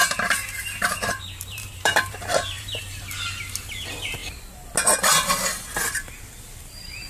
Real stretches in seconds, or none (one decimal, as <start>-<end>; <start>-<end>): 2.8-7.1